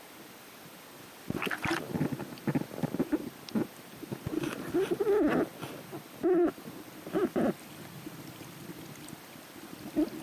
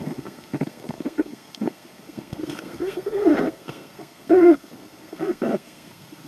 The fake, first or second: second